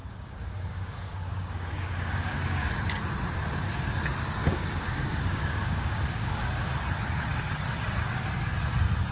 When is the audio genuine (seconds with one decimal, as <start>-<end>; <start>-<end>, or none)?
2.7-4.4; 6.7-9.1